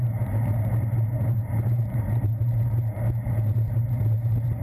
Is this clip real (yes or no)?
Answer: no